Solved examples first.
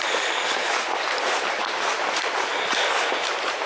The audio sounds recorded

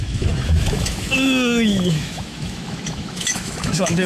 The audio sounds remade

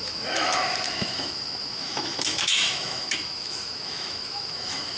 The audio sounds remade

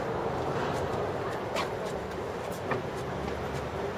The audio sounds recorded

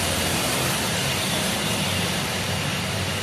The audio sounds recorded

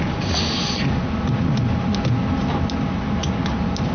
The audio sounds recorded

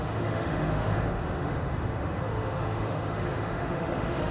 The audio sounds remade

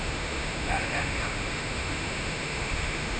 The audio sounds remade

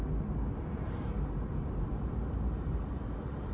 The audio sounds recorded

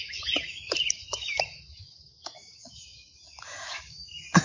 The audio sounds remade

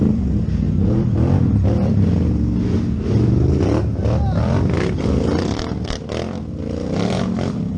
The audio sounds recorded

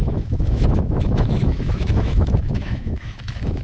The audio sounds remade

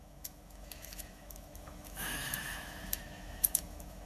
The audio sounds remade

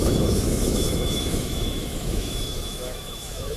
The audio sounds remade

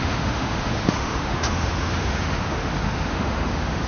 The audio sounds remade